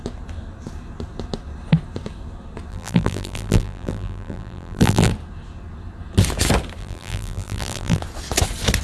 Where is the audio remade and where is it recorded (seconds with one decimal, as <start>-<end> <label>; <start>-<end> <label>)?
0.0-2.7 recorded; 2.7-5.1 remade; 5.1-6.8 recorded; 6.8-8.0 remade; 8.0-8.8 recorded